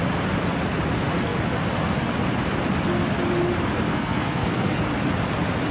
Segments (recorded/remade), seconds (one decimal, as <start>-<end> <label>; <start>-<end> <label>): 0.0-3.9 recorded; 3.9-4.8 remade; 4.8-5.7 recorded